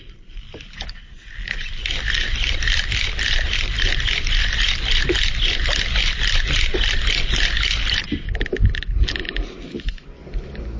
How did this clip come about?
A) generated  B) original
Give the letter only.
B